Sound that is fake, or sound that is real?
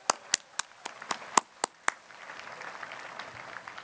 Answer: real